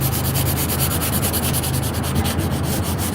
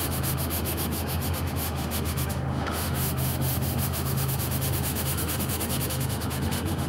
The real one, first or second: first